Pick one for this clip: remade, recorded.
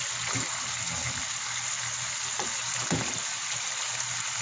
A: recorded